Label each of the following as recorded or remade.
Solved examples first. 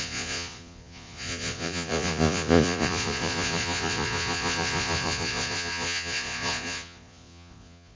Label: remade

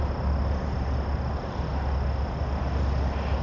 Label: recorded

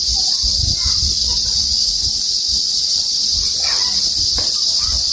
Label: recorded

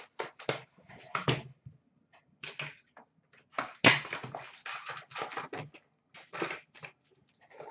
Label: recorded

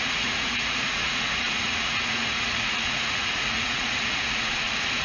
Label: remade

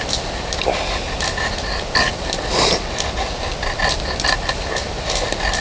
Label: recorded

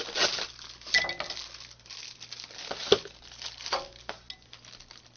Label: recorded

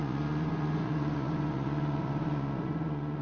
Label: remade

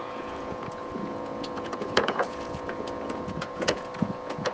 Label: remade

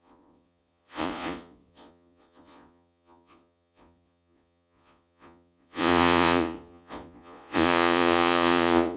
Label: remade